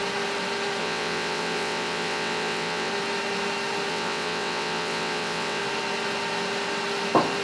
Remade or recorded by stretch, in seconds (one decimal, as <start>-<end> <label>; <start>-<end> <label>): 0.0-0.8 recorded; 0.8-2.9 remade; 2.9-3.9 recorded; 3.9-5.6 remade; 5.6-7.4 recorded